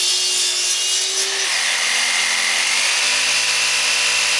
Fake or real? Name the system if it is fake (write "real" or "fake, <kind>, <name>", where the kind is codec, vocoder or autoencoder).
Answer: real